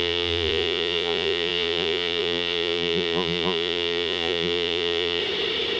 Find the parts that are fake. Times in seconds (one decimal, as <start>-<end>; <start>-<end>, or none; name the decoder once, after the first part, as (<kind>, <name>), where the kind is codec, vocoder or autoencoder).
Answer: 0.0-5.2 (vocoder, Vocos)